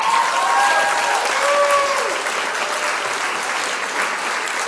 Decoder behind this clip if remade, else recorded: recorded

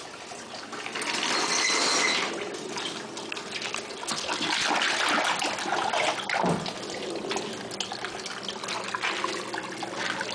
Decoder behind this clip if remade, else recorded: recorded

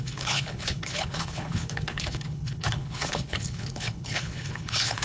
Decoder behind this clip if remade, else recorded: remade, codec, HILCodec